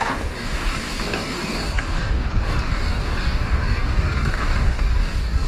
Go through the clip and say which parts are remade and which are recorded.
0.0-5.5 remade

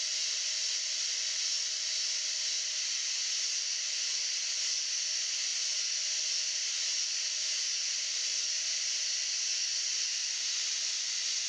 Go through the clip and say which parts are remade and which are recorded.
0.0-11.5 recorded

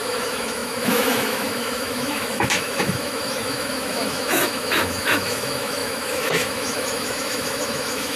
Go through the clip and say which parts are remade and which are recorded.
0.0-8.2 remade

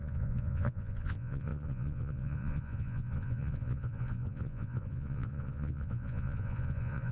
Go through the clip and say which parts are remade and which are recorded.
0.0-7.1 remade

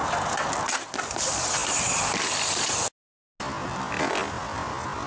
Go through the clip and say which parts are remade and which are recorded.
0.0-5.1 recorded

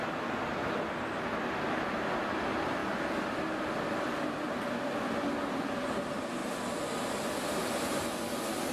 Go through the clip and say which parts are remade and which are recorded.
0.0-8.7 recorded

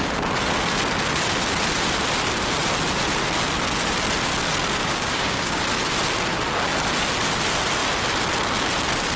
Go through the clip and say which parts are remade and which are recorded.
0.0-4.8 recorded; 4.8-5.6 remade; 5.6-9.2 recorded